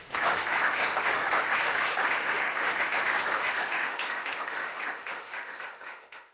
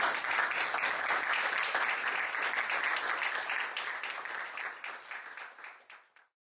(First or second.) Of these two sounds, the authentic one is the second